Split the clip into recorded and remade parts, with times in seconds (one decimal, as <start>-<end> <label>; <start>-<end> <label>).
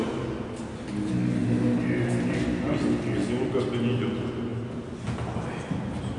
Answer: 0.0-6.2 recorded